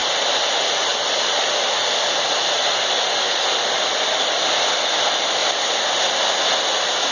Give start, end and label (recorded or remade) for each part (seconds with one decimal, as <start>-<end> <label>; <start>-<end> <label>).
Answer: 0.0-4.3 remade; 4.3-5.4 recorded; 5.4-5.9 remade; 5.9-7.1 recorded